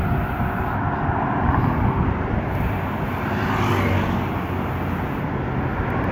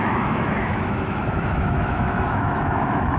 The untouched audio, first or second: first